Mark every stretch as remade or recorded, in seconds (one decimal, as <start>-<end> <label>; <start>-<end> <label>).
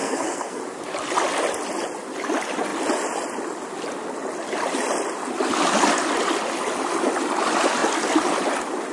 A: 0.0-0.6 remade; 0.6-8.9 recorded